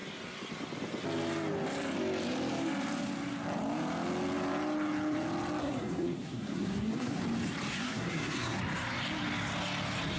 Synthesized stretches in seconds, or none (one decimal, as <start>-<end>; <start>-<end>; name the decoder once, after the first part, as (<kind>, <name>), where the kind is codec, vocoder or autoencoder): 5.6-7.2 (codec, SNAC); 7.7-8.6

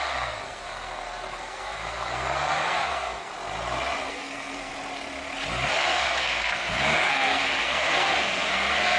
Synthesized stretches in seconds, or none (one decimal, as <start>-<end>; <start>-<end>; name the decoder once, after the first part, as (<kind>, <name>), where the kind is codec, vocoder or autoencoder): 0.0-3.3 (codec, SNAC); 4.1-4.7; 5.5-9.0

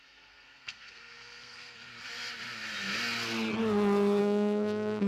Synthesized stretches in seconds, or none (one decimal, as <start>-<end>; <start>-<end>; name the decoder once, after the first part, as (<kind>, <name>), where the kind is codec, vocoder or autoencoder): 0.0-1.9 (codec, SNAC); 4.2-5.1